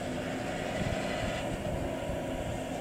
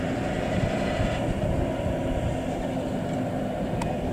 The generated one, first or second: second